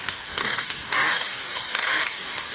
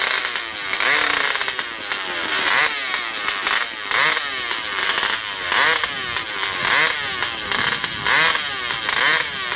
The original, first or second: second